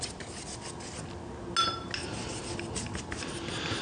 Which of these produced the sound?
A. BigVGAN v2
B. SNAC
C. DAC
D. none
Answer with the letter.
D